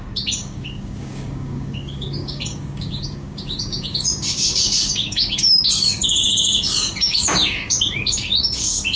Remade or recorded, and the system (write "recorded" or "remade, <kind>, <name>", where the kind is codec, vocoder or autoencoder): remade, codec, DAC